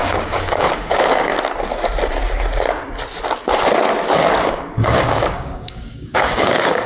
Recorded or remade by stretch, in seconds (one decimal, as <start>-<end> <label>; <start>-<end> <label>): 0.0-1.3 remade; 1.3-4.4 recorded; 4.4-6.9 remade